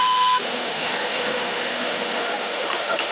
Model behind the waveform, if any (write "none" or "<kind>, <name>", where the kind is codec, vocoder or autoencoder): autoencoder, DAC-VAE